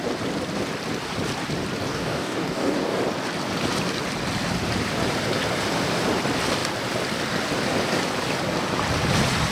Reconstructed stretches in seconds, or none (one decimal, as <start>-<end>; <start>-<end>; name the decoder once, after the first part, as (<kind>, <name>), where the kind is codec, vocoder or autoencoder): 1.9-3.0 (codec, DAC)

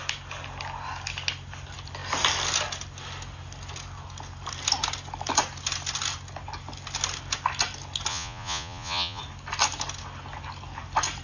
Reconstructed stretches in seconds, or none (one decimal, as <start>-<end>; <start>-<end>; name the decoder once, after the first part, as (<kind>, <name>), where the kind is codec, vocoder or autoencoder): 8.1-9.2 (vocoder, Vocos)

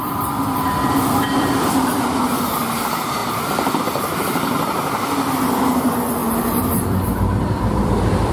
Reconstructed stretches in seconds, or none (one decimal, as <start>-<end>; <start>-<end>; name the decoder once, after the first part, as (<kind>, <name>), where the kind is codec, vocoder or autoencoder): 0.0-8.3 (vocoder, BigVGAN v2)

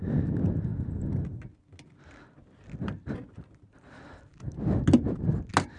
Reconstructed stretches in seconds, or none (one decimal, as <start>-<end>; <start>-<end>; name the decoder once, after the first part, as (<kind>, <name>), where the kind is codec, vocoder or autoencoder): none